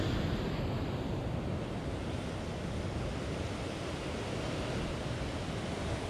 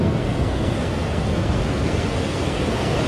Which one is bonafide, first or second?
first